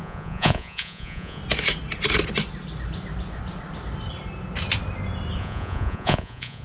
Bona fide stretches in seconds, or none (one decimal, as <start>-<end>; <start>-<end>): 1.4-5.4

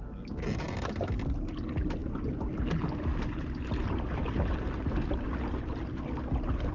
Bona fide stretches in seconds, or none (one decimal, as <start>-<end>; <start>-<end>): 0.0-6.7

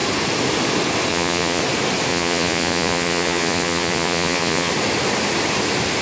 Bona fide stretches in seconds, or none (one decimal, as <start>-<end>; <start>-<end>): 0.0-1.1; 1.6-2.1; 4.7-6.0

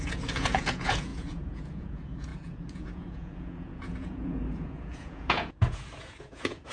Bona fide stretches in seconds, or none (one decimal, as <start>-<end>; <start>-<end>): none

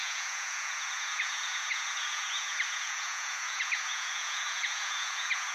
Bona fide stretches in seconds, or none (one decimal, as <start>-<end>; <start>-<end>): none

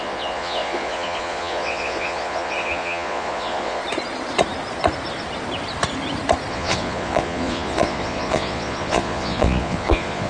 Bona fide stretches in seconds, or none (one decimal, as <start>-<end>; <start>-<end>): 3.8-6.5

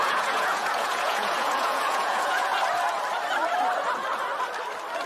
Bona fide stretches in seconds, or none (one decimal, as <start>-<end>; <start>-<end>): 2.5-5.1

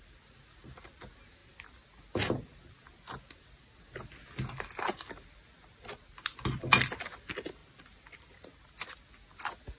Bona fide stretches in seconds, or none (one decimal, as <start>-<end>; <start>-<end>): 0.0-9.8